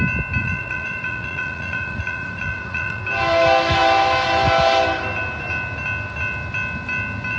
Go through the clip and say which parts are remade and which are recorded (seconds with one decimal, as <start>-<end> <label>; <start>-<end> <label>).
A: 0.0-0.4 recorded; 0.4-3.0 remade; 3.0-7.4 recorded